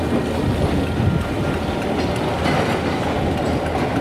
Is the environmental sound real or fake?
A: real